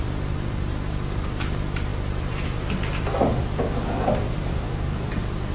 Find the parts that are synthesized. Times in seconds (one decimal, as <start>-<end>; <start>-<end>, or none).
4.5-5.1